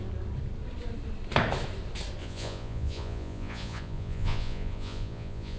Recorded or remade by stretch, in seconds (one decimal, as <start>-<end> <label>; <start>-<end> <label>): 0.0-2.2 recorded; 2.2-5.6 remade